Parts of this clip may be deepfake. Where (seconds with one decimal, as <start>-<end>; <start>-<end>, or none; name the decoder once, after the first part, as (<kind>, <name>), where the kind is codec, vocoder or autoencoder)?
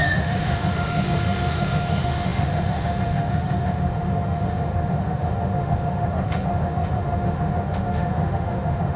0.0-9.0 (autoencoder, DAC-VAE)